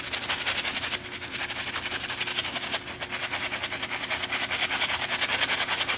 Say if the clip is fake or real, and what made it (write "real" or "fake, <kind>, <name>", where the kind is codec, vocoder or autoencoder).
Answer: real